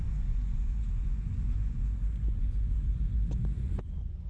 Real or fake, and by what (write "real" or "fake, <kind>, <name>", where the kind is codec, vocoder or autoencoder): fake, vocoder, Vocos